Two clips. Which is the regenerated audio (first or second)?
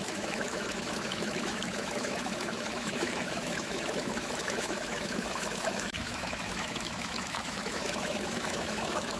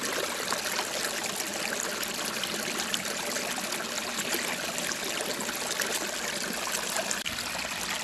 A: first